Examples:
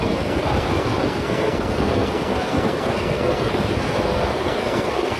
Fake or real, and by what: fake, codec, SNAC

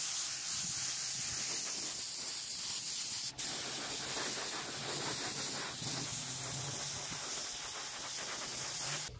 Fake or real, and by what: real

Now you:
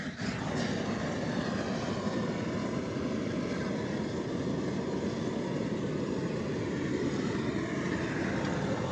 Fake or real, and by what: real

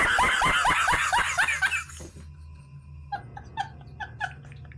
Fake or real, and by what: real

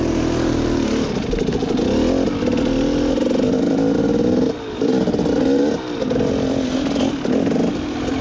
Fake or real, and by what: real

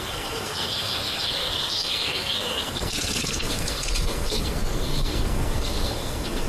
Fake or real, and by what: fake, codec, SNAC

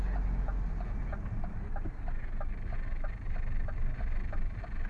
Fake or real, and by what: real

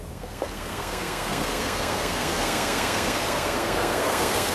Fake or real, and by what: fake, codec, SNAC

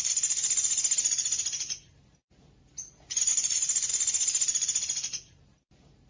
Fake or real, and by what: real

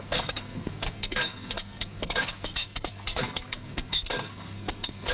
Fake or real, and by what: fake, codec, SNAC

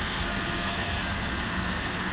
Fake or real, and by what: fake, codec, SNAC